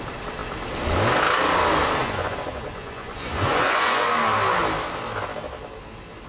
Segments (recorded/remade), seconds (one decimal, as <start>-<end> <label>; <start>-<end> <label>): 0.0-2.0 recorded; 2.0-4.1 remade; 4.1-6.3 recorded